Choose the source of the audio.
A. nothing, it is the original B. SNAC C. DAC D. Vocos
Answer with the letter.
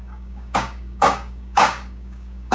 C